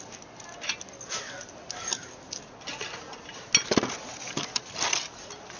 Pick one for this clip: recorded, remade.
recorded